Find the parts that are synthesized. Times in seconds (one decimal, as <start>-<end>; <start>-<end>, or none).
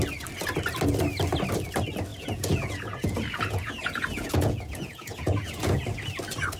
2.1-5.8